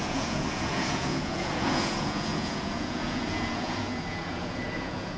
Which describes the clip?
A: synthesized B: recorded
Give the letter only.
A